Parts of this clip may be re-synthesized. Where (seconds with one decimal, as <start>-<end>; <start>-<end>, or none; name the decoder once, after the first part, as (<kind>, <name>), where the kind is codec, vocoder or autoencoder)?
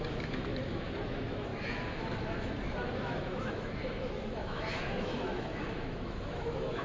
0.0-6.8 (autoencoder, DAC-VAE)